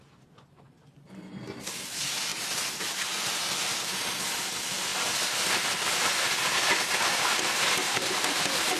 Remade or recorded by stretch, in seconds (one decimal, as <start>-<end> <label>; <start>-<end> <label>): 0.0-8.8 recorded